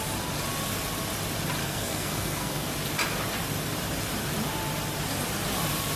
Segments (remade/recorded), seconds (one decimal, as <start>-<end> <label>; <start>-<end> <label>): 0.0-1.6 recorded; 1.6-2.7 remade; 2.7-6.0 recorded